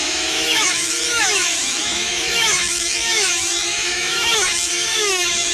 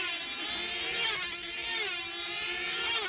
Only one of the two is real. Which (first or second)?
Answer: second